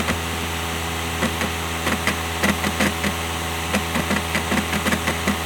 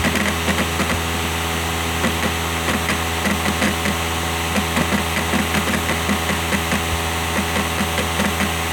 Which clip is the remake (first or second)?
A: first